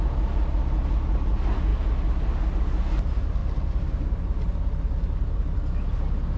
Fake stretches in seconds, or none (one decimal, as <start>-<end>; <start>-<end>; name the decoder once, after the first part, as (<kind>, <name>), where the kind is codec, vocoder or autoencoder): none